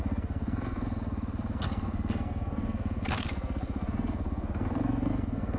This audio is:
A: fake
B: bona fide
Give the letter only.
A